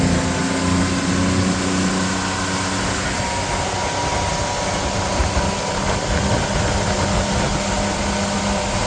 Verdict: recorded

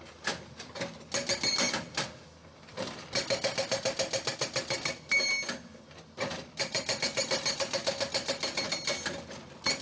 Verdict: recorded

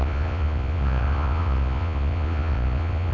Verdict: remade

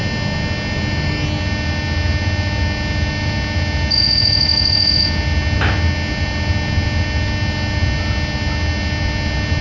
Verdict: recorded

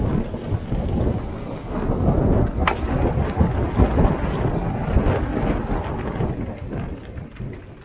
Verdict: recorded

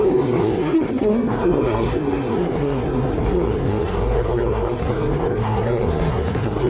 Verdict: remade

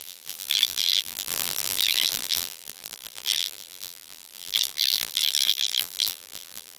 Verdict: remade